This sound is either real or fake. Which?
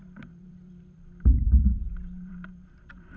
fake